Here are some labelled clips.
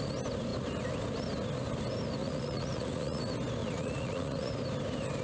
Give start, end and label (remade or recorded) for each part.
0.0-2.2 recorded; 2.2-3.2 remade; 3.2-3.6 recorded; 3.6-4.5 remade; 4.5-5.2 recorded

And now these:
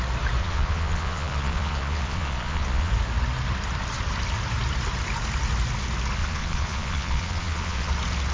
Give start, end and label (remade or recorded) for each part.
0.0-0.4 recorded; 0.4-2.9 remade; 2.9-6.2 recorded; 6.2-7.9 remade; 7.9-8.3 recorded

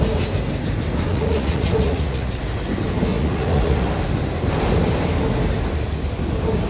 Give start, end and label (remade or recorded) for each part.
0.0-1.1 recorded; 1.1-2.4 remade; 2.4-3.1 recorded; 3.1-3.9 remade; 3.9-6.7 recorded

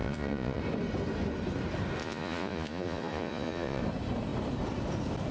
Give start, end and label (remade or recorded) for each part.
0.0-0.6 remade; 0.6-2.0 recorded; 2.0-3.8 remade; 3.8-5.3 recorded

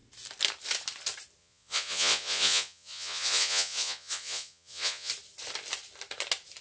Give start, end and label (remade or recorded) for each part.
0.0-1.4 recorded; 1.4-5.1 remade; 5.1-6.6 recorded

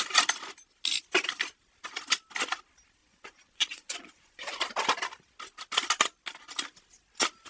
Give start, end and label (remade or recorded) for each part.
0.0-3.0 recorded; 3.0-4.6 remade; 4.6-7.5 recorded

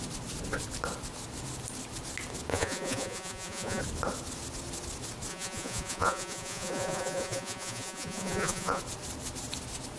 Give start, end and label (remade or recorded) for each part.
0.0-2.5 recorded; 2.5-3.8 remade; 3.8-5.3 recorded; 5.3-8.8 remade; 8.8-10.0 recorded

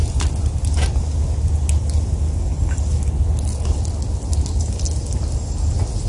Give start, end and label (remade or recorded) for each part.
0.0-6.1 recorded